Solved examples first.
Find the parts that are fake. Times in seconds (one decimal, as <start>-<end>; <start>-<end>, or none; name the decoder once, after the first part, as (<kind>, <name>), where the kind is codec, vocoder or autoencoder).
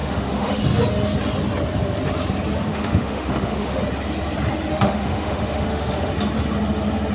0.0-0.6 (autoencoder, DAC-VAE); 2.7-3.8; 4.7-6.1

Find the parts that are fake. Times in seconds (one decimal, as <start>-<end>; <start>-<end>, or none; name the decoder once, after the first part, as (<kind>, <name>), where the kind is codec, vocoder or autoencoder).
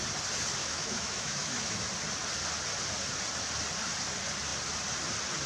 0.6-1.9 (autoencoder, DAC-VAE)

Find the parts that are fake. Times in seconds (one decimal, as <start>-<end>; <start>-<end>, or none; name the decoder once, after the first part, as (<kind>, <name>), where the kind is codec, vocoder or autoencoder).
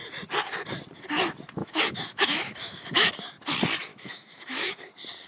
1.6-3.1 (autoencoder, DAC-VAE); 3.9-4.8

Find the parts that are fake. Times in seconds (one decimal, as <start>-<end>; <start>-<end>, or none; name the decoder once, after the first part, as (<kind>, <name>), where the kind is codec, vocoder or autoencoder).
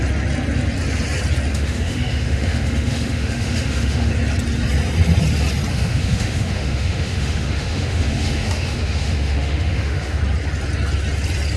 1.5-4.1 (autoencoder, DAC-VAE); 5.7-10.2